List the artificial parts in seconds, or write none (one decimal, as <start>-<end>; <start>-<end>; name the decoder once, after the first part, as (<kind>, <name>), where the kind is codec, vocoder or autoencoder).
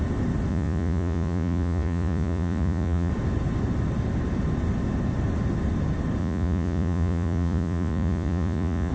0.5-3.1 (vocoder, Vocos); 6.2-8.9